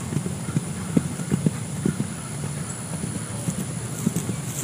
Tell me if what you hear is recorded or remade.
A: recorded